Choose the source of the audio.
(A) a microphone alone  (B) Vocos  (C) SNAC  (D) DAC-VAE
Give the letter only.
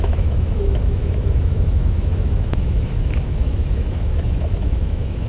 D